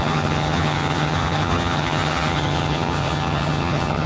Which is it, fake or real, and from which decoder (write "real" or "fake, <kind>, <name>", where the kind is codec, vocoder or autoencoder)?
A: fake, vocoder, HiFi-GAN